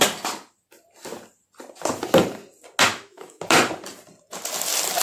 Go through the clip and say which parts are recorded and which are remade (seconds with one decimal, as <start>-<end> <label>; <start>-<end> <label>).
0.0-2.9 recorded; 2.9-3.4 remade; 3.4-5.0 recorded